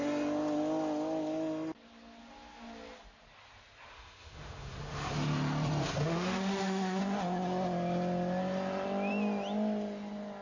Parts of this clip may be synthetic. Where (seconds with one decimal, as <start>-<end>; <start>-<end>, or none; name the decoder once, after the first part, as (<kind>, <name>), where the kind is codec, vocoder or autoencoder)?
3.9-5.1 (autoencoder, DAC-VAE); 6.0-7.0